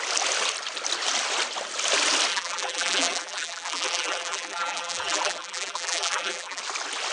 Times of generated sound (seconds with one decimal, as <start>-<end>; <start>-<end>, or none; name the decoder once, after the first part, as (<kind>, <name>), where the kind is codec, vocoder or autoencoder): 2.3-6.6 (vocoder, BigVGAN v2)